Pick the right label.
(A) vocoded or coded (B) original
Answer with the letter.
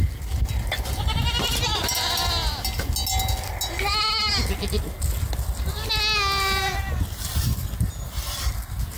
B